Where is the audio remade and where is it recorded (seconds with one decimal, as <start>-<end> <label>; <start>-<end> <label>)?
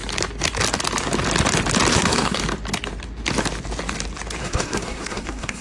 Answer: 0.0-1.9 recorded; 1.9-2.4 remade; 2.4-4.4 recorded; 4.4-5.6 remade